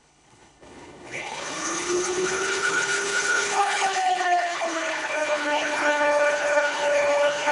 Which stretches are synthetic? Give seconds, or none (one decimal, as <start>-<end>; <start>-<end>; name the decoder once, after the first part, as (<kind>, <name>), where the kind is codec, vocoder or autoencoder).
0.0-7.5 (codec, HILCodec)